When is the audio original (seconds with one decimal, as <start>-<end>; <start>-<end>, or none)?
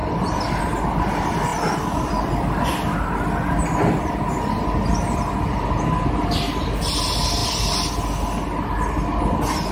0.0-9.7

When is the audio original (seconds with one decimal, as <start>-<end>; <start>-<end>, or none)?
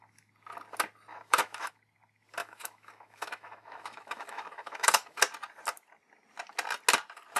0.0-1.1; 1.7-2.4; 5.2-7.4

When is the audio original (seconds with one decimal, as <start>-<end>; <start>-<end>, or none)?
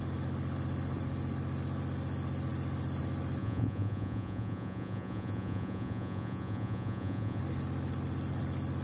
0.0-3.4; 7.4-8.8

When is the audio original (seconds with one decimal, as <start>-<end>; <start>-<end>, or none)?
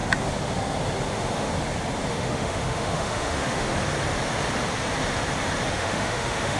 0.0-1.1; 1.5-2.1; 3.7-5.7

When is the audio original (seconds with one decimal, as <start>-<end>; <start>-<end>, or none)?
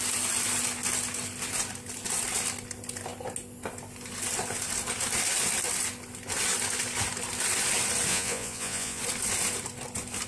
0.0-8.1; 9.0-10.3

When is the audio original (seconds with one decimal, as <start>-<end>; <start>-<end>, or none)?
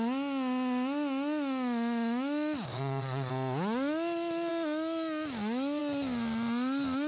0.0-2.7; 3.3-7.1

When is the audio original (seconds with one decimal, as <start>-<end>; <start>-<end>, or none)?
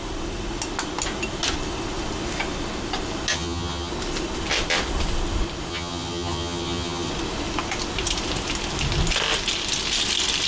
0.0-3.3; 3.9-5.7; 7.1-10.5